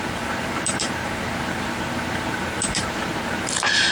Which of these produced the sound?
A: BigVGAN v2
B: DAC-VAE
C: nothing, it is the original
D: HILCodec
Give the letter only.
A